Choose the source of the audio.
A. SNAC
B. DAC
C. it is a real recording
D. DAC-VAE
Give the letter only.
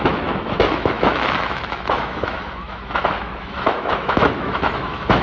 D